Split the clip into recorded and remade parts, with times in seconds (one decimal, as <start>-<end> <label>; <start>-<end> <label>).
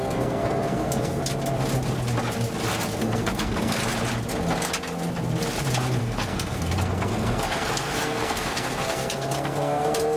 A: 0.0-1.2 remade; 1.2-3.0 recorded; 3.0-3.8 remade; 3.8-6.0 recorded; 6.0-10.2 remade